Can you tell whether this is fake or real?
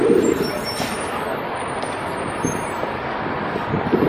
real